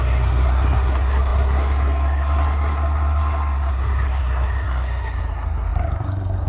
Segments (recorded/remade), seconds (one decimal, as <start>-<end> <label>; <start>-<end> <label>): 0.0-6.5 remade